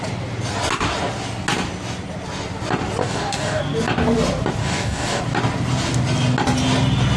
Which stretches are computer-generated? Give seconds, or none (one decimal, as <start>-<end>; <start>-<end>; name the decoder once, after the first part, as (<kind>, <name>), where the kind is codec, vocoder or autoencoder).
3.0-3.6 (codec, DAC); 4.6-5.2